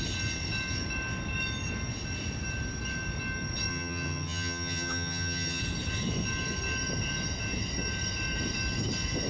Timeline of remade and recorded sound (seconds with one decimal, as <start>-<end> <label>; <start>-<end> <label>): 0.0-3.7 recorded; 3.7-5.6 remade; 5.6-9.3 recorded